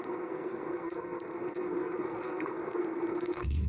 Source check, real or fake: fake